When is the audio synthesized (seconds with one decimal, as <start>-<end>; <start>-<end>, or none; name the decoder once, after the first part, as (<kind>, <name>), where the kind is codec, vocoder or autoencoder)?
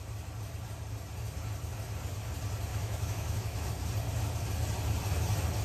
2.7-3.7 (autoencoder, DAC-VAE)